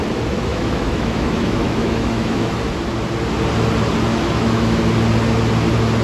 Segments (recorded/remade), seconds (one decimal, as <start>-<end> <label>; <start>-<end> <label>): 0.0-0.5 recorded; 0.5-2.5 remade; 2.5-4.1 recorded; 4.1-4.8 remade; 4.8-6.0 recorded